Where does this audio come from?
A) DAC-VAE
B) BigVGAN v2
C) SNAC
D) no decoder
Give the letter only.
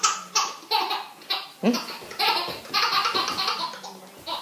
D